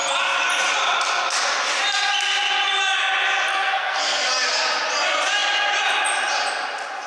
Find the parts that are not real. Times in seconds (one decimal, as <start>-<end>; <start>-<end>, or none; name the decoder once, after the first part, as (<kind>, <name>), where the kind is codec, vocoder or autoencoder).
3.5-4.3 (codec, SNAC)